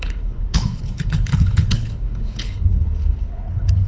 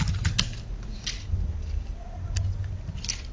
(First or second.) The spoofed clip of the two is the first